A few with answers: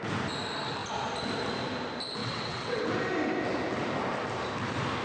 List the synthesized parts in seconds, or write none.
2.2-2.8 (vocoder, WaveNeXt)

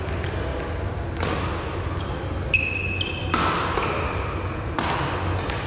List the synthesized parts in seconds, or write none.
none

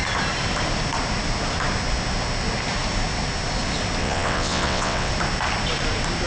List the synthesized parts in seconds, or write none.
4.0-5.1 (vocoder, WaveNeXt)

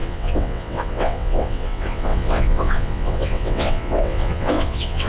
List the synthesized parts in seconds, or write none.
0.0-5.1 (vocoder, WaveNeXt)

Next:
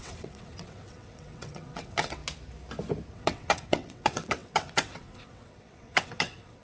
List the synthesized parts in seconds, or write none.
0.0-2.2 (vocoder, WaveNeXt); 3.1-6.6